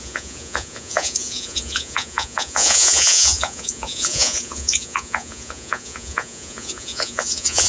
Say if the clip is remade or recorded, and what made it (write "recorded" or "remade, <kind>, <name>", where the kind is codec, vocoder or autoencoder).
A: remade, vocoder, Vocos